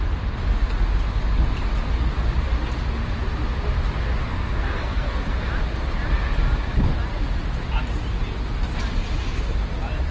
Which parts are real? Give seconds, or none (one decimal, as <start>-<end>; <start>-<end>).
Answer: 0.0-4.3; 5.5-10.1

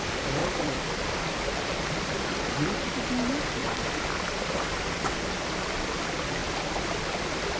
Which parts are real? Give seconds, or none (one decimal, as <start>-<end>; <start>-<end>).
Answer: 0.0-0.4; 2.5-3.6; 4.8-6.4

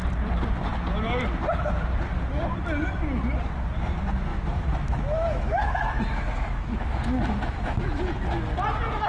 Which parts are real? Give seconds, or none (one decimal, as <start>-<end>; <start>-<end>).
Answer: 0.0-4.3; 8.0-9.1

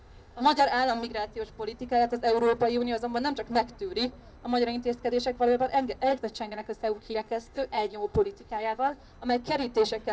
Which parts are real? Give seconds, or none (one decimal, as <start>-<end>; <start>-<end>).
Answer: 0.6-6.1; 9.0-10.1